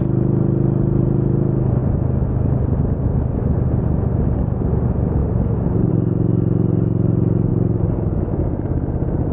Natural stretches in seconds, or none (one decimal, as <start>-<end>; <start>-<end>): 0.0-9.3